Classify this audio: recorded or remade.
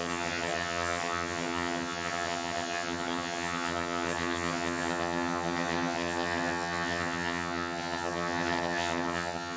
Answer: remade